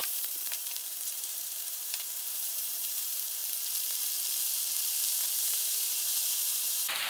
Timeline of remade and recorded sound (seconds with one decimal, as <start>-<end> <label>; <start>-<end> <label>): 0.0-3.4 remade; 3.4-5.4 recorded; 5.4-7.1 remade